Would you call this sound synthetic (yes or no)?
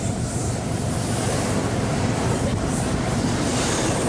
yes